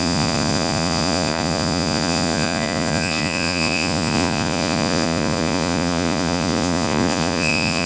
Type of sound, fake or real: fake